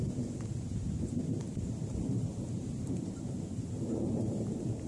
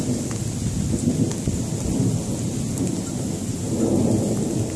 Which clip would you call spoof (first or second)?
first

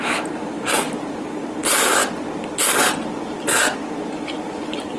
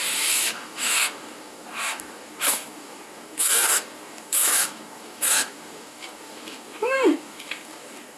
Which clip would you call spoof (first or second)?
second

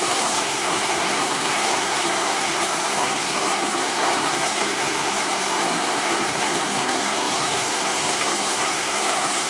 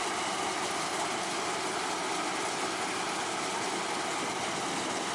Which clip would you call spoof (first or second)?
first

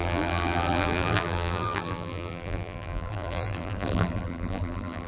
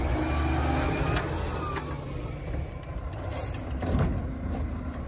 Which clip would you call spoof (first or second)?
first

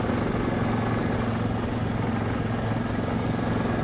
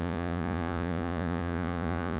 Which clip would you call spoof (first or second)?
second